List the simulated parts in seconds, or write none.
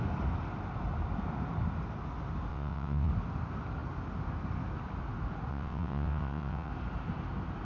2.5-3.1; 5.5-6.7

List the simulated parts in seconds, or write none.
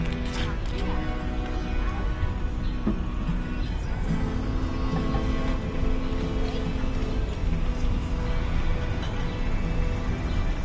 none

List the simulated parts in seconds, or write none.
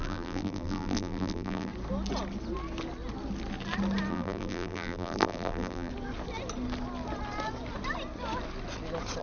0.0-1.7; 4.1-5.9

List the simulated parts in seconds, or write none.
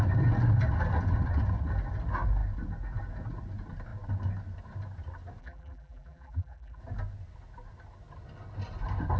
5.4-6.8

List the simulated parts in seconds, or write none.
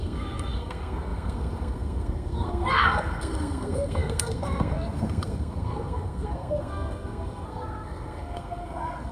0.0-9.1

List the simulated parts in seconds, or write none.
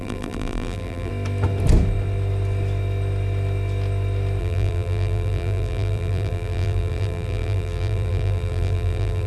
0.0-1.1; 4.4-9.3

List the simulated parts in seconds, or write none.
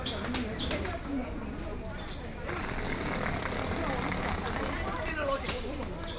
4.6-6.2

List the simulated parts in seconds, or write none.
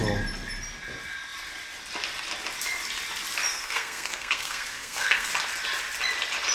3.5-5.3